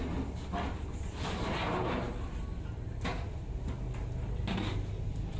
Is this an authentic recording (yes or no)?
yes